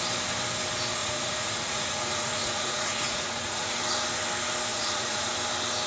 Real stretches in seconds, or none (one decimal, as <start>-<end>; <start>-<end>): 0.0-1.0; 3.8-4.7; 5.3-5.9